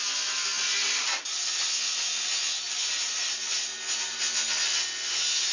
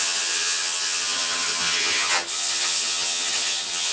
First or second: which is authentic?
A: first